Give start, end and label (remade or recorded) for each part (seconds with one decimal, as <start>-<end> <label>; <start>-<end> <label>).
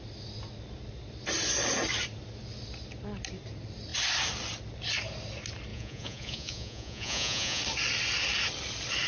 0.0-5.7 recorded; 5.7-7.6 remade; 7.6-9.1 recorded